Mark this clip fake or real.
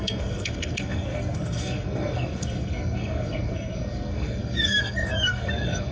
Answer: fake